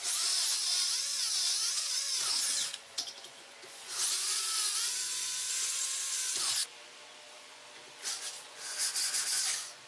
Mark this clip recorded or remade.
remade